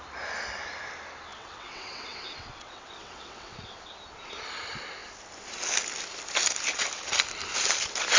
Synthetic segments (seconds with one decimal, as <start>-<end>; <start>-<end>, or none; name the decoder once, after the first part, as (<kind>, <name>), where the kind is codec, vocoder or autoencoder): 1.3-3.9 (vocoder, WaveNeXt)